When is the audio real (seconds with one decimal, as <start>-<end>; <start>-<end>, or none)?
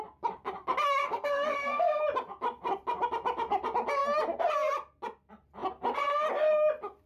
0.0-1.0; 2.0-7.1